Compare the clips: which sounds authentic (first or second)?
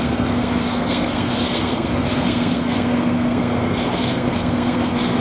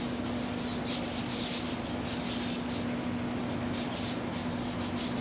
second